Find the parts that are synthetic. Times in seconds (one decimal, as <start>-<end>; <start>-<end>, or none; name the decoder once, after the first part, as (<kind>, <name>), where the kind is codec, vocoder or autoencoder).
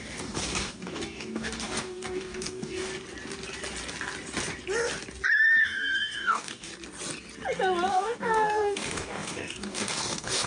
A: 0.0-2.9 (codec, DAC); 5.6-6.7; 7.9-10.5